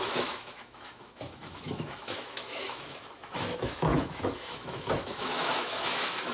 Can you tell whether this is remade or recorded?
remade